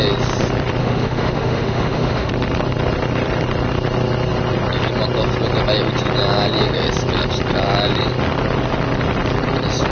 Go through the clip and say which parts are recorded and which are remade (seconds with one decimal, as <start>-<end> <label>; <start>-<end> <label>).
0.0-0.8 recorded; 0.8-2.3 remade; 2.3-9.9 recorded